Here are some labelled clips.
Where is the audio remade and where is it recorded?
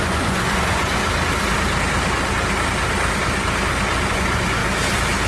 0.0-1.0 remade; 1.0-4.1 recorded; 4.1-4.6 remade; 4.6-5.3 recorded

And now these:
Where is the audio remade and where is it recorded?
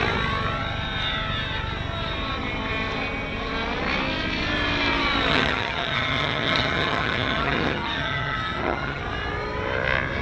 0.0-5.3 recorded; 5.3-9.0 remade; 9.0-10.2 recorded